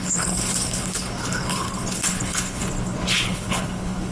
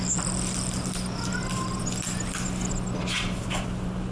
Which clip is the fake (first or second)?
first